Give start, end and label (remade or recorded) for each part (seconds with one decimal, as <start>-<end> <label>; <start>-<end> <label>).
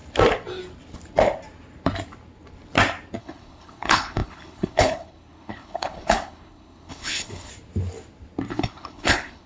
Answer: 0.0-3.2 recorded; 3.2-7.5 remade; 7.5-8.5 recorded; 8.5-9.5 remade